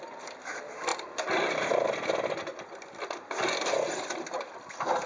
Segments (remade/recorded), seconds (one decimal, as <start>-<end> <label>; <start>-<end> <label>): 0.0-5.1 recorded